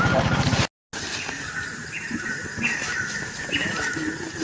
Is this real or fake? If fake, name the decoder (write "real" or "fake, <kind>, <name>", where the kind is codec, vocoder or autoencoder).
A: real